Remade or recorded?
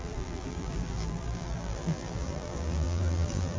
remade